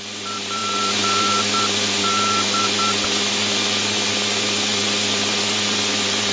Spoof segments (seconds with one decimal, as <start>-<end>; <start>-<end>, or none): none